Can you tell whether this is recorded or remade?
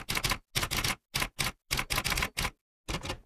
recorded